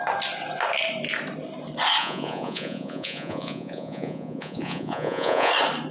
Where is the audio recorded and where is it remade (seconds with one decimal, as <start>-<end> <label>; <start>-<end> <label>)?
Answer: 0.0-2.0 recorded; 2.0-5.5 remade; 5.5-5.9 recorded

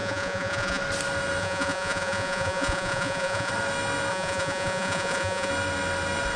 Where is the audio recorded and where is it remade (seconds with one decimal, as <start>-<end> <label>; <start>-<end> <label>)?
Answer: 0.0-0.8 remade; 0.8-1.4 recorded; 1.4-3.5 remade; 3.5-4.1 recorded; 4.1-5.5 remade; 5.5-6.4 recorded

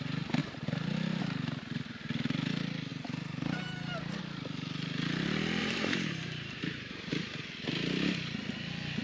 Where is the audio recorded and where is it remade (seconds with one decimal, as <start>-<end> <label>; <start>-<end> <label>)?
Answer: 0.0-0.4 recorded; 0.4-1.2 remade; 1.2-2.9 recorded; 2.9-4.2 remade; 4.2-5.6 recorded; 5.6-7.1 remade; 7.1-9.0 recorded

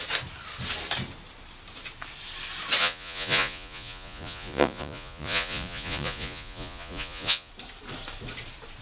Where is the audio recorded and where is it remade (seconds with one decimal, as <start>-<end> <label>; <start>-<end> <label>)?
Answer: 0.0-2.8 recorded; 2.8-7.5 remade; 7.5-8.8 recorded

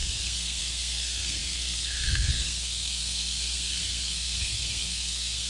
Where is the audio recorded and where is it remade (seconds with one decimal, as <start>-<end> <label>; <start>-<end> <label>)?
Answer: 0.0-5.5 remade

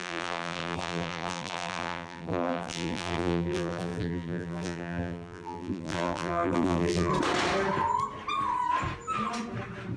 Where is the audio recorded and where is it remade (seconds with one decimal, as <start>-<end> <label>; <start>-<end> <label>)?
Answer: 0.0-7.1 remade; 7.1-10.0 recorded